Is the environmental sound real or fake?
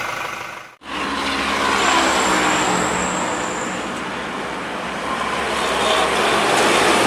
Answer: real